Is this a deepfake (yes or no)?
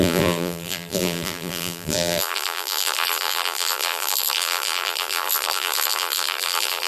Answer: yes